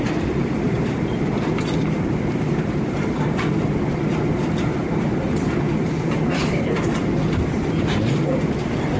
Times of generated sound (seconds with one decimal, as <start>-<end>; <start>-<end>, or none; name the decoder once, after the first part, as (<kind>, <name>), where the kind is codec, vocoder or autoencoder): none